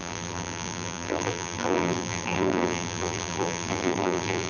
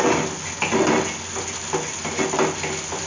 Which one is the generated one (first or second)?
first